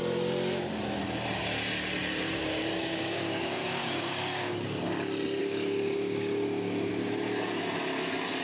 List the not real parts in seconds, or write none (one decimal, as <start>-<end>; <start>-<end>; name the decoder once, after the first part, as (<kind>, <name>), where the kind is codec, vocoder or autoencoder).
2.2-4.8 (codec, DAC); 5.4-6.9